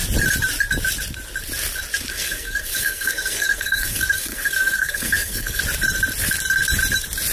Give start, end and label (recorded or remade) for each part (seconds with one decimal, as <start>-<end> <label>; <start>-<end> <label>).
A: 0.0-2.1 recorded; 2.1-5.6 remade; 5.6-7.3 recorded